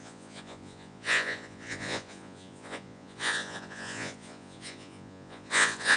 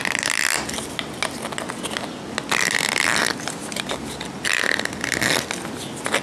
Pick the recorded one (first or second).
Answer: second